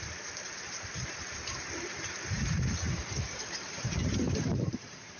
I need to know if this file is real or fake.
fake